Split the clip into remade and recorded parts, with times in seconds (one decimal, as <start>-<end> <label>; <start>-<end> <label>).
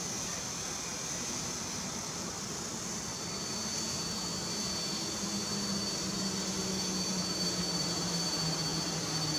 0.0-9.4 recorded